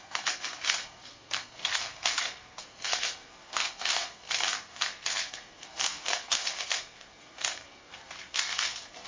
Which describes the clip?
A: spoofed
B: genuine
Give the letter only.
A